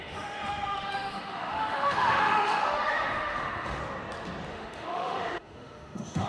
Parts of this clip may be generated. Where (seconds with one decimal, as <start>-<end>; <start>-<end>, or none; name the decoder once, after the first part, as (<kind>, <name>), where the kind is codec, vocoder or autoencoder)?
0.0-3.8 (autoencoder, DAC-VAE); 4.5-6.3